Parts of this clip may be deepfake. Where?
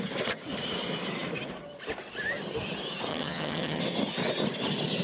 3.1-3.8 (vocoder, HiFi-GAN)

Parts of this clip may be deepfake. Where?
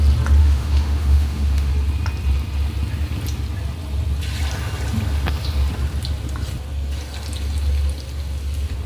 0.4-1.7 (autoencoder, DAC-VAE)